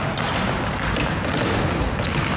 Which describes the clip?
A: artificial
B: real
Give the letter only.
B